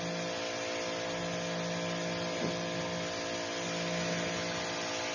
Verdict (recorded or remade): recorded